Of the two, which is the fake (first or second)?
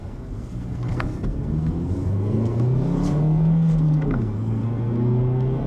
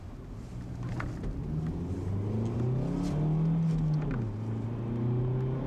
first